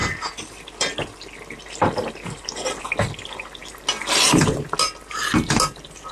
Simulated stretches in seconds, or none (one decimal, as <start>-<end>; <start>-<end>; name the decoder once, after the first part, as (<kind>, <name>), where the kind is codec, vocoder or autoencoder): none